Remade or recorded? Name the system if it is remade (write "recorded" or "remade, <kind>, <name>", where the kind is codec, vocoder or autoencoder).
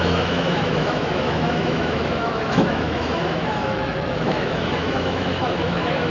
remade, autoencoder, DAC-VAE